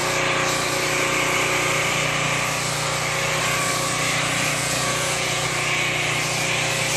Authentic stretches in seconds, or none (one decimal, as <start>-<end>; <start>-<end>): 0.0-4.6; 5.5-7.0